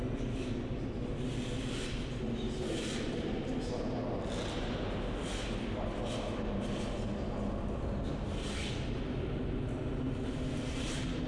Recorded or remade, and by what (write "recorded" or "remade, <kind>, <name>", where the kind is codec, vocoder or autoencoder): recorded